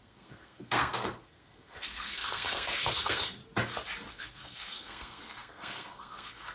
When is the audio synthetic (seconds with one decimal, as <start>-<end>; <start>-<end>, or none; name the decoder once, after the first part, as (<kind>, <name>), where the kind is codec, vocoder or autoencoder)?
0.0-3.4 (codec, SNAC); 4.1-6.5